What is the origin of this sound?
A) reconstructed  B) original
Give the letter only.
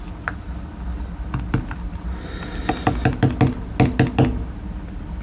B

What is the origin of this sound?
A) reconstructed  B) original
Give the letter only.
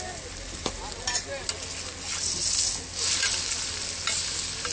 B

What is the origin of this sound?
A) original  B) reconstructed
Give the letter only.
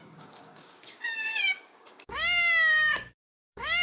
B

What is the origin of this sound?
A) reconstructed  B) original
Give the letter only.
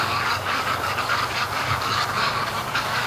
A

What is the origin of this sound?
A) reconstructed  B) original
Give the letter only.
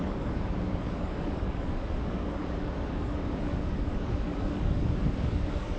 A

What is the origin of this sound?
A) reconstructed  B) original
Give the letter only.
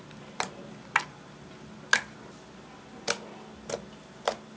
B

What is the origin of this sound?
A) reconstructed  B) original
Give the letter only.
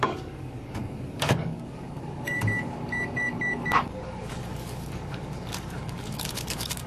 A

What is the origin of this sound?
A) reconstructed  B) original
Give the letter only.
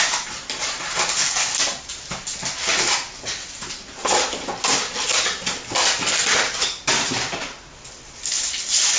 B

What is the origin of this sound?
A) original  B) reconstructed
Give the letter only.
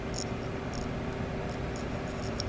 A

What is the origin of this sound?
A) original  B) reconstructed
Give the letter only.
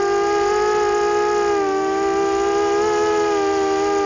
A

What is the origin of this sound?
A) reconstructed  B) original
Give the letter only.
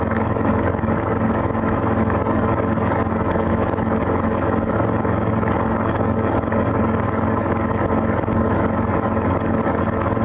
A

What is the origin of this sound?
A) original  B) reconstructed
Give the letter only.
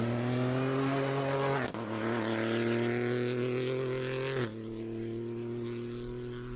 A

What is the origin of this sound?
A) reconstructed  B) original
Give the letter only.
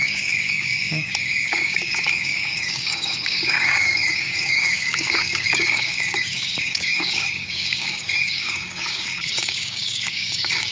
A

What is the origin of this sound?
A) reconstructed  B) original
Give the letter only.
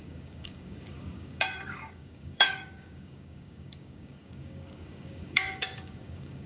A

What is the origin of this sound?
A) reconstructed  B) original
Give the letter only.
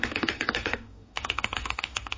A